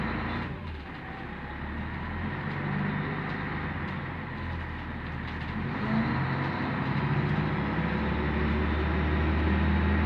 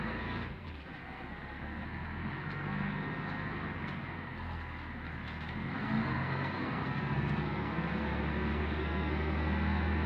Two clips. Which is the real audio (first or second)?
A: first